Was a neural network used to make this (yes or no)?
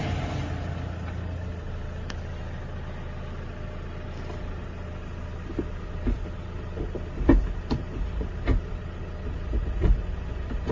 no